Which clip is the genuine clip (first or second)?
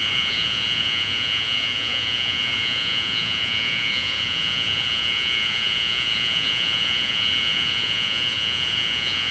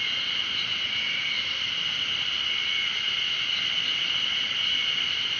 second